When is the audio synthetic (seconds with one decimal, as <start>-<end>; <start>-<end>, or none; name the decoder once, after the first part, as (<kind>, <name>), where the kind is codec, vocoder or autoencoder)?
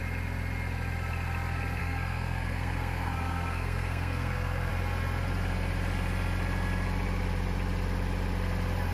1.8-4.7 (codec, SNAC)